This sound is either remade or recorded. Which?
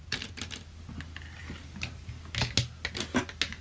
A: recorded